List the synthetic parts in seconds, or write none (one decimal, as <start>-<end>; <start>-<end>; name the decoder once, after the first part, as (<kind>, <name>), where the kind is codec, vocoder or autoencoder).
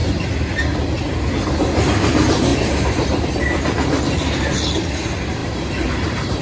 2.5-3.3 (vocoder, BigVGAN v2); 5.4-6.4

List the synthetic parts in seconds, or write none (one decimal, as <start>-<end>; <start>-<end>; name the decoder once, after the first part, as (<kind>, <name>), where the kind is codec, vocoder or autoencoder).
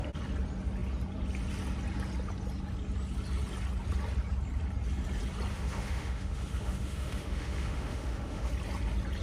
5.5-8.5 (autoencoder, DAC-VAE)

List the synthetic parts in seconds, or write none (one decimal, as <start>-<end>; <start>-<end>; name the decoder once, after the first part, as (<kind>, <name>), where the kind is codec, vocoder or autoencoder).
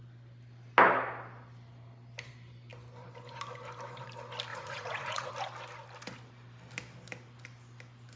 4.5-5.3 (vocoder, Vocos)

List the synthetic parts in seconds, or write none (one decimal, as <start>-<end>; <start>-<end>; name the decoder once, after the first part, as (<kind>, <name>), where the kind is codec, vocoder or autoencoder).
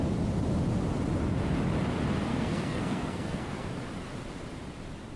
2.3-3.7 (codec, SNAC)